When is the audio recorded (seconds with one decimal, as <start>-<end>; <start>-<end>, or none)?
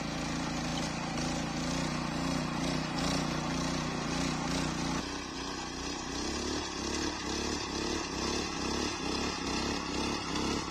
0.0-10.7